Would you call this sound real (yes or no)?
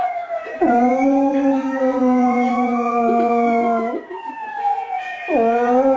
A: no